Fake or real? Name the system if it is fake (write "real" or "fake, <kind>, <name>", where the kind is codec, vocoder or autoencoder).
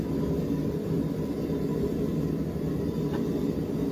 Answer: real